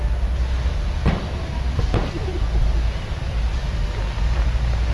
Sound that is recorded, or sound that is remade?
recorded